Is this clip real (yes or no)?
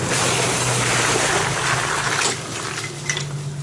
yes